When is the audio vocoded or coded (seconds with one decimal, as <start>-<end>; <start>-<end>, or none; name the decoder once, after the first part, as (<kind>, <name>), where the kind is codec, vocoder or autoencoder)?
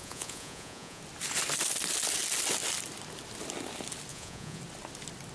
0.0-1.0 (vocoder, Vocos); 4.1-4.6